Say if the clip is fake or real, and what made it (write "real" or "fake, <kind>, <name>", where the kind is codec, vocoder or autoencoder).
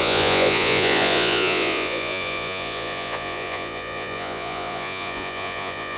fake, vocoder, Vocos